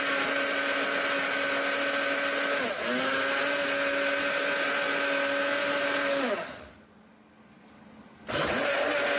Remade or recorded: recorded